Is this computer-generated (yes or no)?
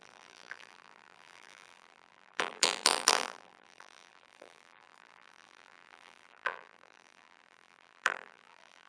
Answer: yes